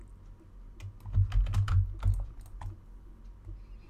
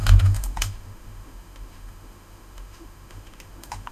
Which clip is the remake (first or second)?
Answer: second